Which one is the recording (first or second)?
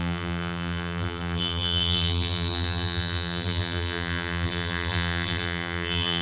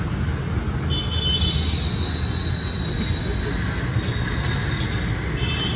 second